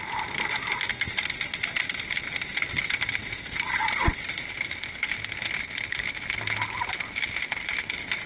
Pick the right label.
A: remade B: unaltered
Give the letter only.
B